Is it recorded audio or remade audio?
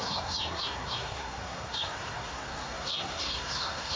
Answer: remade